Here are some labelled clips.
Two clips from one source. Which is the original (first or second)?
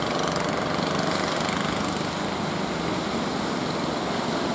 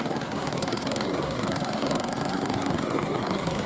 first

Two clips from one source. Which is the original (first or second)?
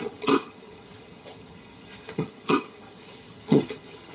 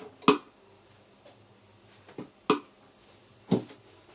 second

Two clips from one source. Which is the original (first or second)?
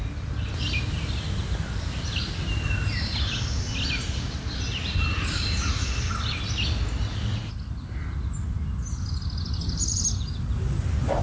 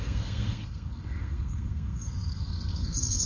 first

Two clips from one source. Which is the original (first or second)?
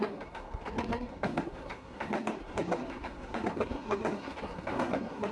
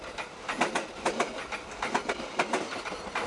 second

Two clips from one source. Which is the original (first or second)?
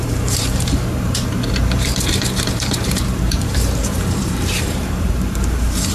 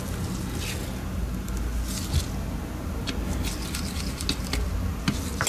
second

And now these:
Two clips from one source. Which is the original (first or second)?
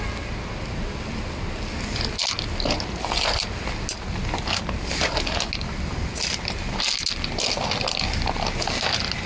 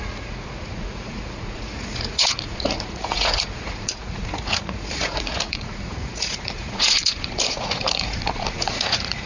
first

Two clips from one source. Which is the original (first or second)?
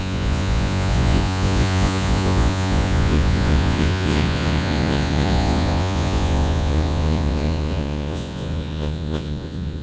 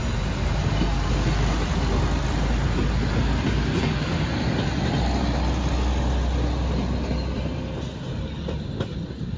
second